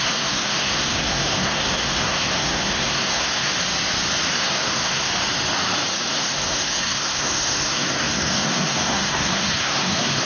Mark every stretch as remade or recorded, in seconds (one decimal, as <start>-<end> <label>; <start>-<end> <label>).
0.0-3.5 remade; 3.5-4.3 recorded; 4.3-5.1 remade; 5.1-6.1 recorded; 6.1-10.2 remade